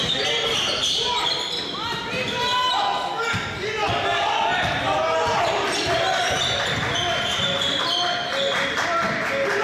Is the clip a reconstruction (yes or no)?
no